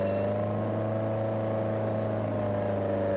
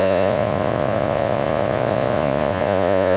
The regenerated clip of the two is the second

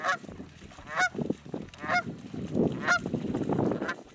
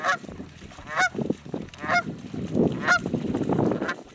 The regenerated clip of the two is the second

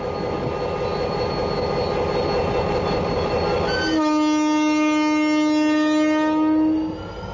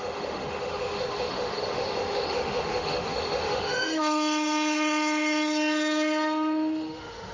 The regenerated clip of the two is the second